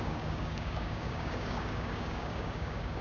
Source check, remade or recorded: remade